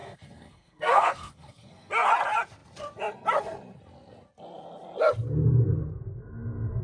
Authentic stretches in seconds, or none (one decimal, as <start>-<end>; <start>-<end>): 1.9-6.8